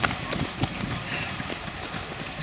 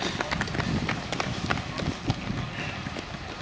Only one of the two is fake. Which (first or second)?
first